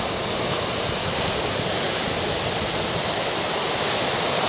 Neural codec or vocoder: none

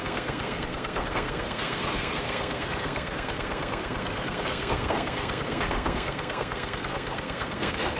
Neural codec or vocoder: codec, SNAC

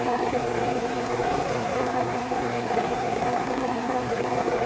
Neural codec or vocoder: codec, SNAC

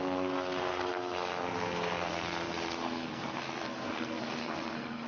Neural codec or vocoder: codec, SNAC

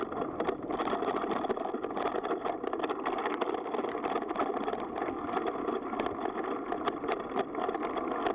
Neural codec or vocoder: none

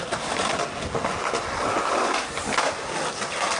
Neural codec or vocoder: none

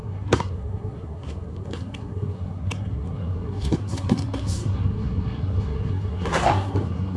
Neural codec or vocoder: codec, SNAC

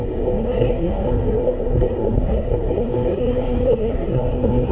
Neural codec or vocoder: codec, SNAC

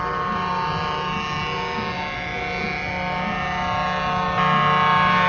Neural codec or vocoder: none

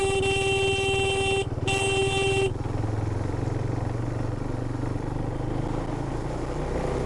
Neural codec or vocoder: none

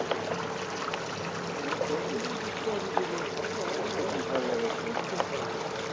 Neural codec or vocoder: none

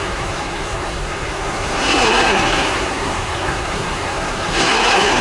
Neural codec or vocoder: codec, SNAC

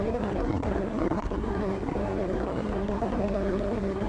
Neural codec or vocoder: codec, SNAC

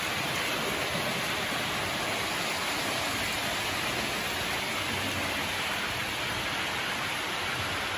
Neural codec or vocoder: none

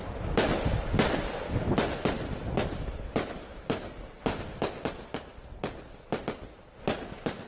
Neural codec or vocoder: none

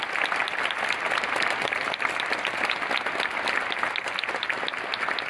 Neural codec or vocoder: none